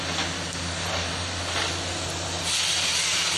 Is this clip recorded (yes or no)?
yes